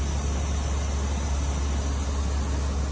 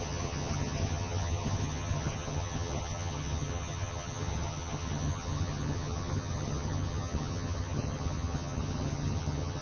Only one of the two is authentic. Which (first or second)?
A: first